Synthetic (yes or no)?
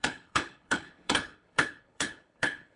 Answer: yes